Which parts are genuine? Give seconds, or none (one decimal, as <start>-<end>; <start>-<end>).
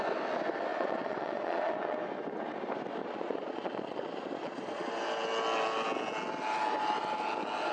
0.0-0.7; 2.0-3.0; 4.9-7.7